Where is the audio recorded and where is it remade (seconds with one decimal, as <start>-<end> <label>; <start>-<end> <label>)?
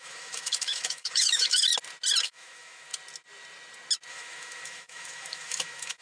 0.0-1.7 remade; 1.7-2.2 recorded; 2.2-2.9 remade; 2.9-4.1 recorded; 4.1-6.0 remade